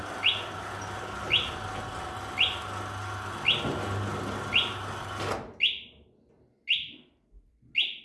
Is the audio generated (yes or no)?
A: no